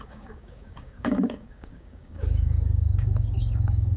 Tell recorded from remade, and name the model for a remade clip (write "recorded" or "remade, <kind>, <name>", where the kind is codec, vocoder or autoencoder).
remade, codec, DAC